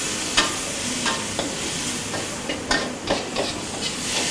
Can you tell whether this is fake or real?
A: real